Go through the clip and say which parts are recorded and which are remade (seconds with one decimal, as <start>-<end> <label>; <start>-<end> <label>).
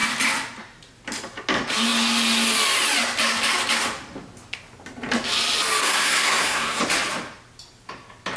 0.0-5.8 recorded; 5.8-6.8 remade; 6.8-8.4 recorded